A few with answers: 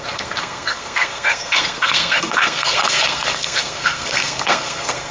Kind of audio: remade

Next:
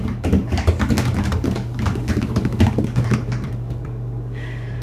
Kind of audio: remade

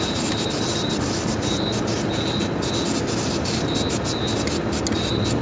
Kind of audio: recorded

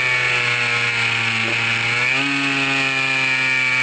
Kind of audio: recorded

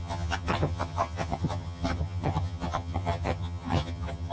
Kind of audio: remade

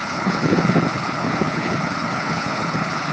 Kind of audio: remade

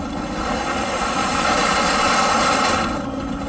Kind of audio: recorded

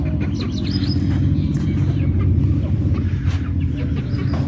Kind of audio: recorded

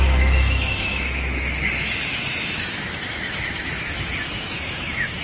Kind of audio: remade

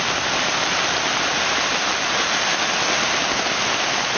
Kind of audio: recorded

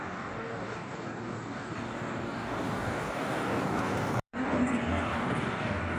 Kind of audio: remade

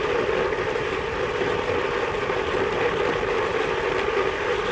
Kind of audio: recorded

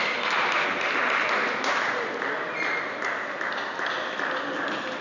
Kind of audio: recorded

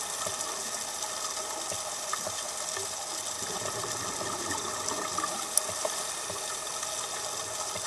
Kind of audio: recorded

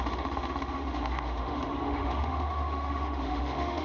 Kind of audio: remade